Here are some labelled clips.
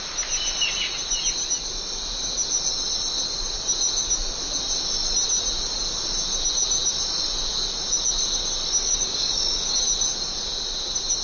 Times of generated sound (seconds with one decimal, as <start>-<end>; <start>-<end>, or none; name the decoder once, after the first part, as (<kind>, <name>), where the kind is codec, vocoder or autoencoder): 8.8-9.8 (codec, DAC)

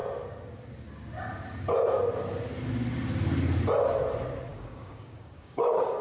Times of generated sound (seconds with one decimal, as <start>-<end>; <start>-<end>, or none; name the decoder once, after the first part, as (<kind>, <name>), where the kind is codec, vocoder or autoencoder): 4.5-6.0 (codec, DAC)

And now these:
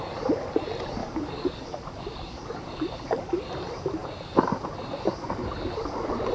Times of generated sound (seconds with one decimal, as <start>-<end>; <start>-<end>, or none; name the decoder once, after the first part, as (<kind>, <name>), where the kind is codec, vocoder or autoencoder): 1.0-3.5 (codec, DAC)

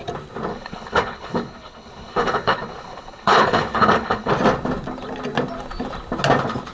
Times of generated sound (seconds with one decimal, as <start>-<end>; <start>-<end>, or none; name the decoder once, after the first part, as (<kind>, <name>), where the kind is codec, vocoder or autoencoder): 0.5-4.3 (codec, HILCodec)

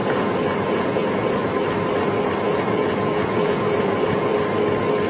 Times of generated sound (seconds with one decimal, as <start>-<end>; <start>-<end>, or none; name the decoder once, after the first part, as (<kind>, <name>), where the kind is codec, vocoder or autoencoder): 0.0-1.5 (vocoder, Vocos); 2.4-4.3